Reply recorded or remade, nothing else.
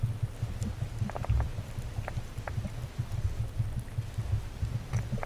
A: recorded